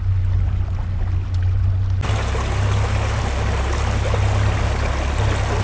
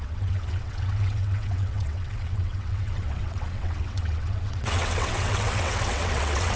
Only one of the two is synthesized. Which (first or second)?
second